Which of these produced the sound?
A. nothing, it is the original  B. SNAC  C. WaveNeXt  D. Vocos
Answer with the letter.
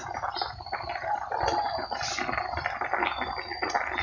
A